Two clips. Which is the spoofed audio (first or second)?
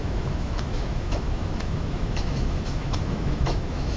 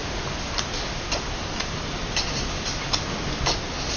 first